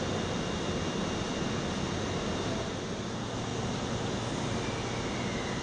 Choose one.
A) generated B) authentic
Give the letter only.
B